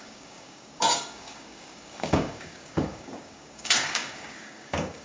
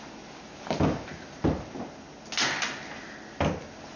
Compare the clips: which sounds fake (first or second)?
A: first